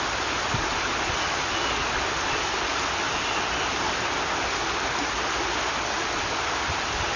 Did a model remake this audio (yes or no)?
no